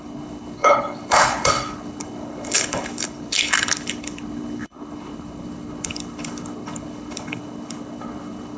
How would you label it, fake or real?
fake